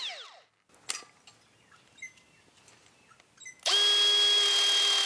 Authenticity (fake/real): real